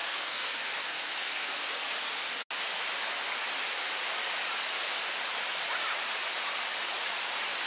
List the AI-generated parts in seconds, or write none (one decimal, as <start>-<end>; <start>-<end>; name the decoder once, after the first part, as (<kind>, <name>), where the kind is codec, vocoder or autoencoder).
0.0-2.1 (codec, SNAC)